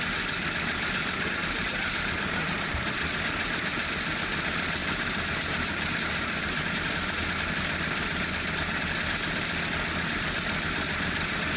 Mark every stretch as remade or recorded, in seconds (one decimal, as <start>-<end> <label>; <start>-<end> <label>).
0.0-1.4 recorded; 1.4-2.8 remade; 2.8-4.8 recorded; 4.8-7.2 remade; 7.2-11.6 recorded